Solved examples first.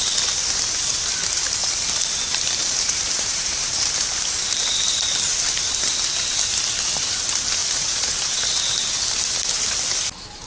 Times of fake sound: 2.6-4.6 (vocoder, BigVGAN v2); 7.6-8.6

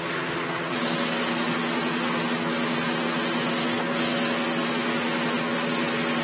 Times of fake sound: none

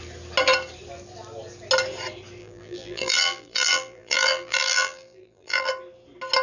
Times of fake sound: 2.4-5.7 (vocoder, BigVGAN v2)